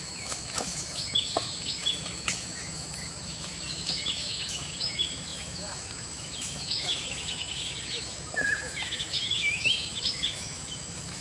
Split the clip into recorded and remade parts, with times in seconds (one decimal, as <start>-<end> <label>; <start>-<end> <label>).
0.0-11.2 remade